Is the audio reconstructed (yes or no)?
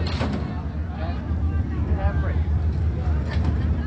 no